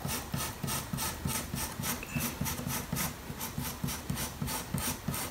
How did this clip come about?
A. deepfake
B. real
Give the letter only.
B